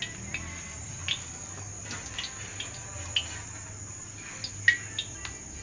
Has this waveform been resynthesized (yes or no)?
no